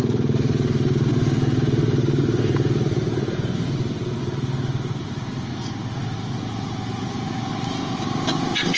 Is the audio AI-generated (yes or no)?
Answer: no